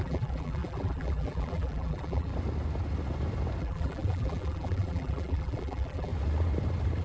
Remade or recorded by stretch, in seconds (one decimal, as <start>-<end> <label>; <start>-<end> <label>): 0.0-2.3 remade; 2.3-3.6 recorded; 3.6-6.1 remade; 6.1-7.0 recorded